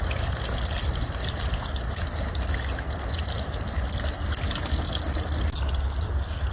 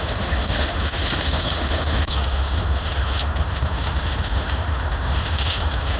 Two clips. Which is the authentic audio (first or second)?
first